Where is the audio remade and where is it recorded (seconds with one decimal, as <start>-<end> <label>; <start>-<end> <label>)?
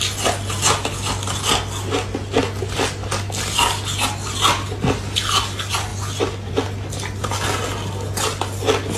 0.0-9.0 recorded